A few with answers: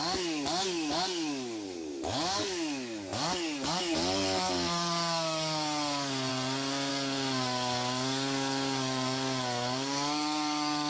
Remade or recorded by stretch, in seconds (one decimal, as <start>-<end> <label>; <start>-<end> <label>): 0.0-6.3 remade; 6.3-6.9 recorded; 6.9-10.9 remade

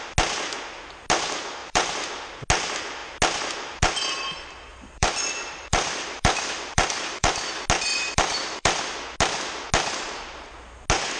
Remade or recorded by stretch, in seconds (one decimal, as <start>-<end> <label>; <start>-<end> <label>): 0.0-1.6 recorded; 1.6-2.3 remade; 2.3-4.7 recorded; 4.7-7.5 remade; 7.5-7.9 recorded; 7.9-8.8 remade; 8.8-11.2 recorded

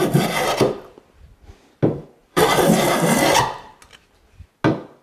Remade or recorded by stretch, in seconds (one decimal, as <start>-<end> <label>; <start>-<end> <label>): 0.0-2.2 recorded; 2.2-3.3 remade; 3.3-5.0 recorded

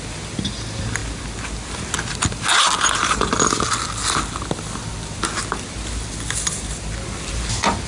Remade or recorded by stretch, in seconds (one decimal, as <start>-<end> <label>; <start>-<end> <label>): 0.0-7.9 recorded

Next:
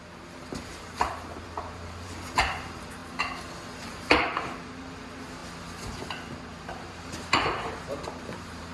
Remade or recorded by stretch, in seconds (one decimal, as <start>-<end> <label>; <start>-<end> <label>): 0.0-3.0 remade; 3.0-3.8 recorded; 3.8-5.4 remade; 5.4-6.6 recorded; 6.6-8.7 remade

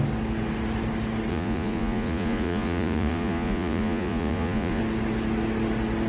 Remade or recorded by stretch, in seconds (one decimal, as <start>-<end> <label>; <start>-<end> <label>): 0.0-1.3 recorded; 1.3-4.8 remade; 4.8-6.1 recorded